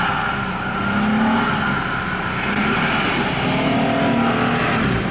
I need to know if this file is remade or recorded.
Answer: recorded